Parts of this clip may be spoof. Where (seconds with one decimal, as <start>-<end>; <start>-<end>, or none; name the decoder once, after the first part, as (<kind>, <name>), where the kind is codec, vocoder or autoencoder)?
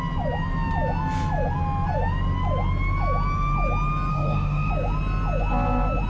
4.1-4.7 (autoencoder, DAC-VAE)